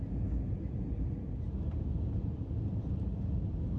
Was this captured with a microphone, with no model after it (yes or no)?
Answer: yes